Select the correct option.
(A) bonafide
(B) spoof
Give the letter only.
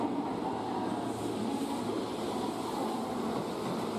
A